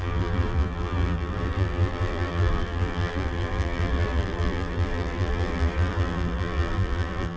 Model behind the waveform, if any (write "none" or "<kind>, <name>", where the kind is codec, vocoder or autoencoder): vocoder, BigVGAN v2